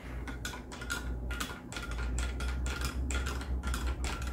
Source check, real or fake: real